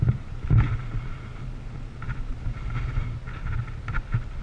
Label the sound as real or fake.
real